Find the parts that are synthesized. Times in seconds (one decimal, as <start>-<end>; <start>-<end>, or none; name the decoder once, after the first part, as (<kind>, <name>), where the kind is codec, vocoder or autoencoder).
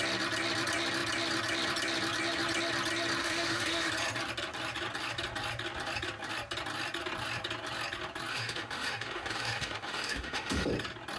3.2-3.9 (autoencoder, DAC-VAE); 8.3-10.7